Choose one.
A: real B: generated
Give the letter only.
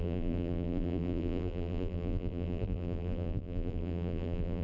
B